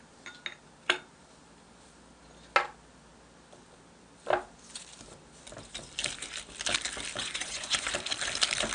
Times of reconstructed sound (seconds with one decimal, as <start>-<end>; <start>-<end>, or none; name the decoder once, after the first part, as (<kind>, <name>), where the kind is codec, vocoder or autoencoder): 7.2-7.9 (vocoder, Vocos)